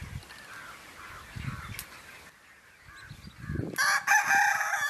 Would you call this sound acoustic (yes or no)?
yes